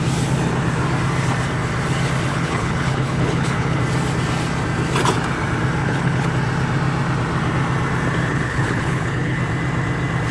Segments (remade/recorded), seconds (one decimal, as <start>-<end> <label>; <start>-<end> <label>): 0.0-2.3 recorded; 2.3-3.8 remade; 3.8-5.8 recorded; 5.8-6.3 remade; 6.3-8.3 recorded; 8.3-9.4 remade; 9.4-10.3 recorded